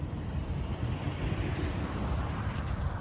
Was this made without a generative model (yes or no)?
no